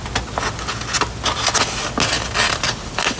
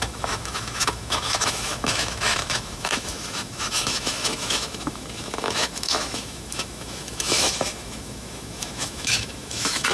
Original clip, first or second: first